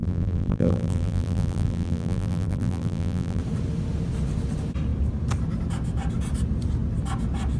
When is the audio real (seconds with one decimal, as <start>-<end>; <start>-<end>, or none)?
3.4-7.6